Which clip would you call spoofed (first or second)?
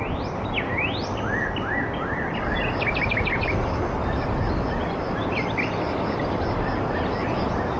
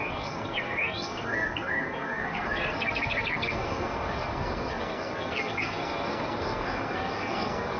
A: second